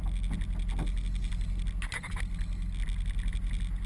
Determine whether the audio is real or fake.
real